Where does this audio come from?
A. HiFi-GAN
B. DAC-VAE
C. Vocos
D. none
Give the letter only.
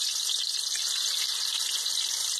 D